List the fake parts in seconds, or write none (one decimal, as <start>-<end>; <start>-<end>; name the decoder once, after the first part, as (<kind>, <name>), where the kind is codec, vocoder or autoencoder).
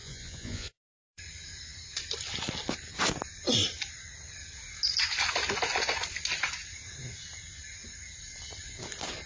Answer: 0.0-1.2 (vocoder, Vocos)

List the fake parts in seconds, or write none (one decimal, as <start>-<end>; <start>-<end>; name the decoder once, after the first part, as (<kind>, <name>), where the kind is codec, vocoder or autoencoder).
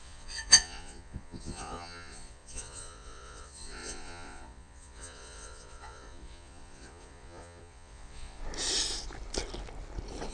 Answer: 0.0-8.4 (vocoder, Vocos)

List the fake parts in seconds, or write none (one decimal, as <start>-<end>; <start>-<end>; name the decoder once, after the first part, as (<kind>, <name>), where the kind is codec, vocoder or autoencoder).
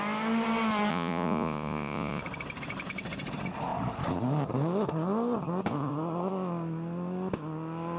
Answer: 0.9-2.2 (vocoder, Vocos)